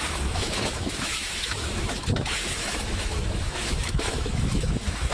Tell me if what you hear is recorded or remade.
remade